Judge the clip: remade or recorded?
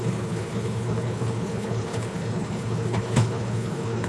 remade